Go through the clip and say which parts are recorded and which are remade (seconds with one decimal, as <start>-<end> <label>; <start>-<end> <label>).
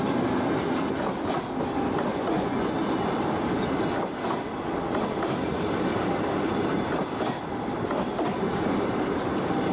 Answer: 0.0-2.1 recorded; 2.1-2.7 remade; 2.7-9.7 recorded